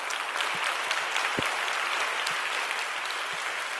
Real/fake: real